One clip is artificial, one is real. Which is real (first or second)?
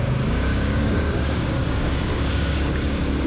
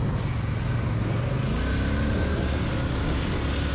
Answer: second